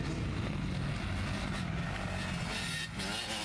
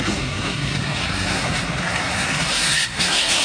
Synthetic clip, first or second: second